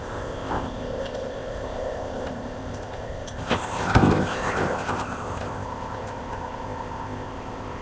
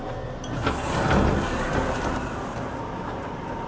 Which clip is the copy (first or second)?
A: first